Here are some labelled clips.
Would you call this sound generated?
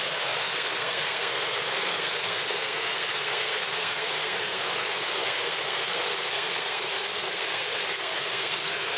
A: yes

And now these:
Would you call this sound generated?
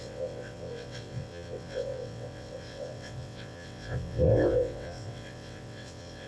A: yes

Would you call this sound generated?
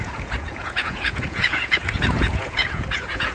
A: yes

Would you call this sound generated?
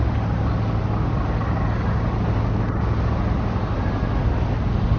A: no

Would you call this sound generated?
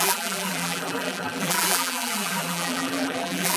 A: yes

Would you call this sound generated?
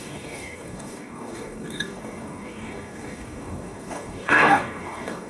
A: yes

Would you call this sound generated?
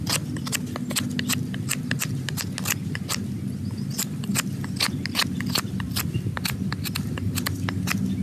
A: no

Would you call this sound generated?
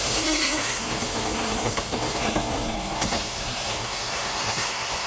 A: yes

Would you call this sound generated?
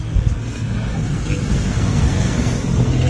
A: yes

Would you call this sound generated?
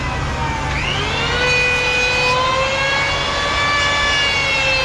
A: no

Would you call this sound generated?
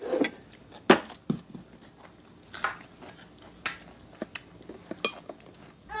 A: no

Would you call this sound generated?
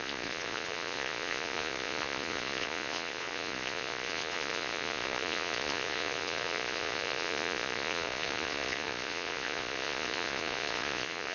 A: yes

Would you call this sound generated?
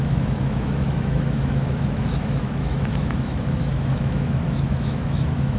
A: yes